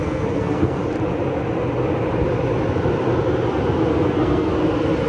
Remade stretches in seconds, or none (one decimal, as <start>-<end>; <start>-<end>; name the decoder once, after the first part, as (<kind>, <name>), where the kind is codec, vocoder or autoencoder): 0.0-0.8 (codec, SNAC); 3.9-4.5